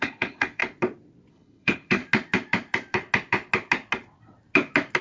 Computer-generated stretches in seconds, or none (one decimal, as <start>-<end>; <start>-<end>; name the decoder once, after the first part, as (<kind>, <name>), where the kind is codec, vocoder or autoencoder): 0.0-0.6 (codec, HILCodec); 1.3-2.0